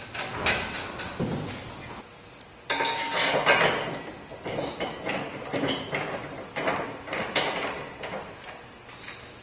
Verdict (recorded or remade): recorded